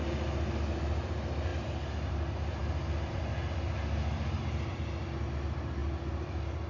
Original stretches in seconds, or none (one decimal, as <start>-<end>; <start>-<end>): 0.0-1.5; 2.1-2.6; 3.2-5.8